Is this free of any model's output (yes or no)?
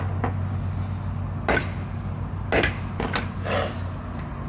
yes